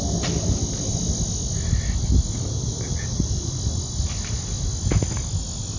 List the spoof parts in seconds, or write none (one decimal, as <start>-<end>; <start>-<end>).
none